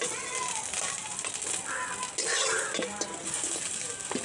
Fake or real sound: real